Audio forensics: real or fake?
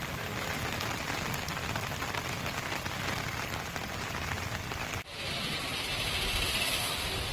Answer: real